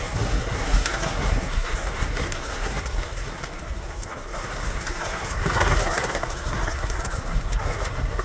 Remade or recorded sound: remade